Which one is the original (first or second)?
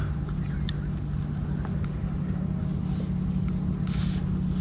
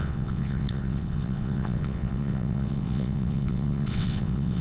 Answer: first